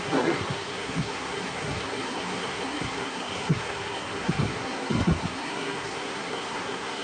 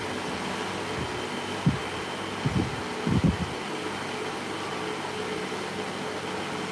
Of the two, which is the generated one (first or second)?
first